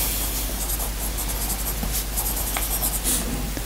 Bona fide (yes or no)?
yes